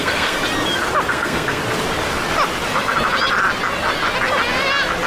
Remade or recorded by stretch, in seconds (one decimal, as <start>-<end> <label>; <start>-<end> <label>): 0.0-0.4 remade; 0.4-1.1 recorded; 1.1-1.6 remade; 1.6-5.1 recorded